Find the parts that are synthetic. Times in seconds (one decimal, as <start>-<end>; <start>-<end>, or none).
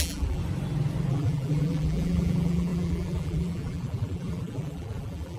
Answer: 0.0-0.4; 1.1-5.4